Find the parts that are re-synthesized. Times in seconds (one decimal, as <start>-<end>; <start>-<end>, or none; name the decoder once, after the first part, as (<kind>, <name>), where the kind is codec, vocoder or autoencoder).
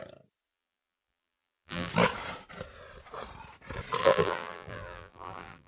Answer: 0.5-1.9 (vocoder, BigVGAN v2); 4.0-5.7